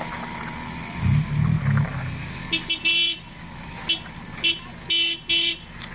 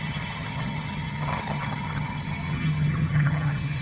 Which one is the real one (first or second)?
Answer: first